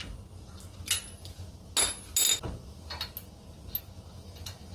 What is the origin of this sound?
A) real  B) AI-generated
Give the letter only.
A